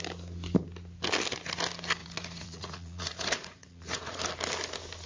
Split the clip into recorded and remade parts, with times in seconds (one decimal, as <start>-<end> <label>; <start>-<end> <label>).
0.0-2.0 recorded; 2.0-4.2 remade; 4.2-5.1 recorded